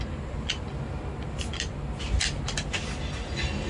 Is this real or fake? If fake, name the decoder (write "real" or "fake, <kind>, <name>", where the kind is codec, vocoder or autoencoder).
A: real